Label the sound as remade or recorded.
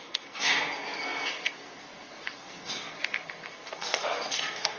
remade